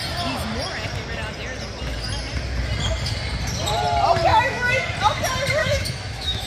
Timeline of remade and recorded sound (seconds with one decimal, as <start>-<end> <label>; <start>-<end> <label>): 0.0-4.3 recorded; 4.3-4.8 remade; 4.8-5.6 recorded; 5.6-6.5 remade